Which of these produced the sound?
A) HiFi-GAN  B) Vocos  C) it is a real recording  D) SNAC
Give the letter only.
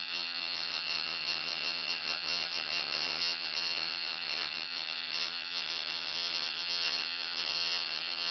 A